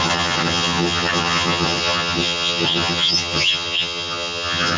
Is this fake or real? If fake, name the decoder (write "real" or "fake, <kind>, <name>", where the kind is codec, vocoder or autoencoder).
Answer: fake, vocoder, HiFi-GAN